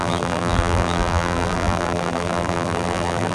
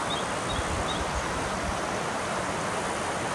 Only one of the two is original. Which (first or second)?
second